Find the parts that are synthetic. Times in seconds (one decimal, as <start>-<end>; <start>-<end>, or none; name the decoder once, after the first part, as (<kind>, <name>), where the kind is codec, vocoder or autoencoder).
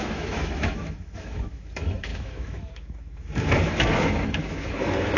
0.0-5.2 (autoencoder, DAC-VAE)